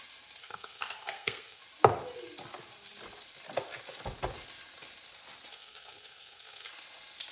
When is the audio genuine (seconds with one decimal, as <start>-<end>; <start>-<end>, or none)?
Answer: 0.0-0.4; 1.6-5.5; 6.7-7.3